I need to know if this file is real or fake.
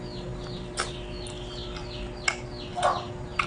real